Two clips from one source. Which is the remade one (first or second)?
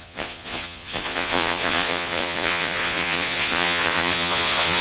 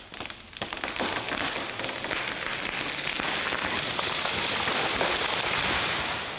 first